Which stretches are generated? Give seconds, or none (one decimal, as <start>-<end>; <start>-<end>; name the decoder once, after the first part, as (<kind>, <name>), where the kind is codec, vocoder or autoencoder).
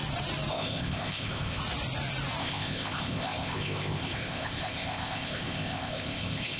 0.5-1.6 (codec, ZipCodec); 2.4-6.6